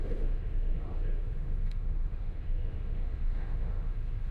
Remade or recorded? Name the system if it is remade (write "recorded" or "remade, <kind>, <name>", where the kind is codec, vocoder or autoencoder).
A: remade, autoencoder, DAC-VAE